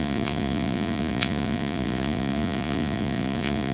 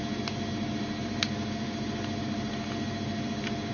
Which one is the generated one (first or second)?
first